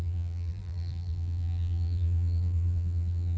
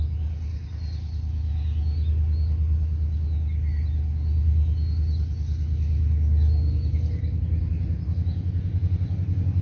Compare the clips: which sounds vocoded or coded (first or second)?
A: first